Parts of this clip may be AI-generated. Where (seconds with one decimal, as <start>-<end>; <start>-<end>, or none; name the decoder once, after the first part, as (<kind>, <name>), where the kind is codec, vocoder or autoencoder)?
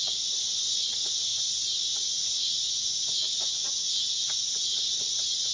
0.0-3.8 (vocoder, Vocos); 5.0-5.5